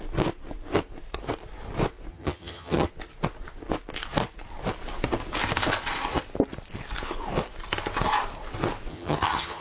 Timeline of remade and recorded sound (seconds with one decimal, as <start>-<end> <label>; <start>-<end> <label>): 0.0-2.1 recorded; 2.1-2.9 remade; 2.9-8.9 recorded; 8.9-9.6 remade

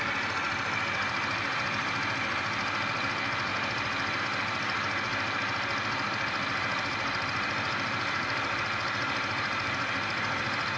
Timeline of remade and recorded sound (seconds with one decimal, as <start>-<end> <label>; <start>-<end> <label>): 0.0-10.8 recorded